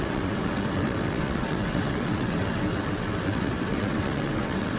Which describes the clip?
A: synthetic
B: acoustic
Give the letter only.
A